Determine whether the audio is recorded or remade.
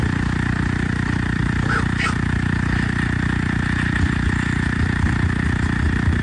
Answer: recorded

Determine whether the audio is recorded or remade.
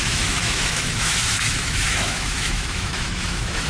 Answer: remade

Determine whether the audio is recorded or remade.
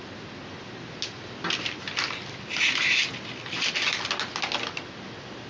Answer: recorded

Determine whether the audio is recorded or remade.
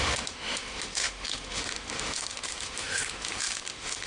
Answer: remade